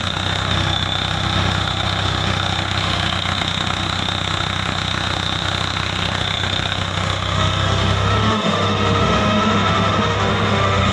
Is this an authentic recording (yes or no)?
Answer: no